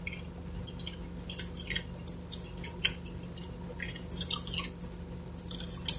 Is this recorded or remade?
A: recorded